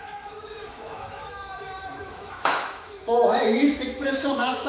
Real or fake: fake